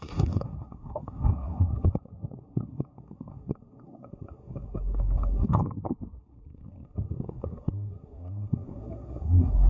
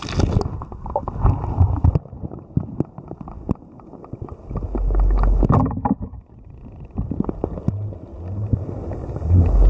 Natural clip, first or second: second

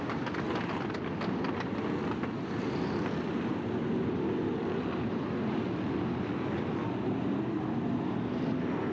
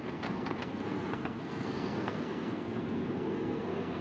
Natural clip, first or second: first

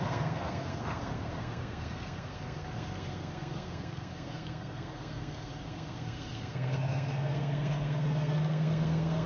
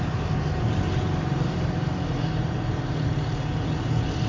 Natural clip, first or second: second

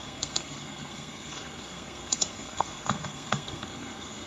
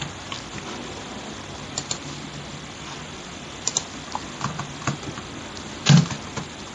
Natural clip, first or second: second